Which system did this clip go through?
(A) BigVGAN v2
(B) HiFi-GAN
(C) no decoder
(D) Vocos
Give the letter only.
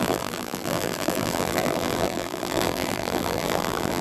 A